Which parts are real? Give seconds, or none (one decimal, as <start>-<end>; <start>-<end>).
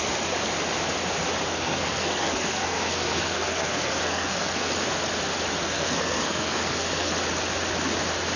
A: 0.0-1.5; 4.7-5.6; 7.1-8.4